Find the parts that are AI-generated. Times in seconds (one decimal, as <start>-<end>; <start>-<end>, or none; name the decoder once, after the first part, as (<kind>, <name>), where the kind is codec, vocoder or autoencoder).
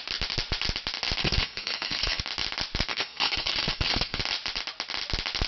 1.2-2.2 (codec, SNAC); 2.9-4.2